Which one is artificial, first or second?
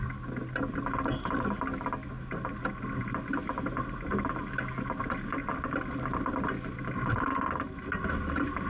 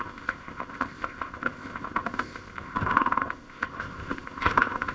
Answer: second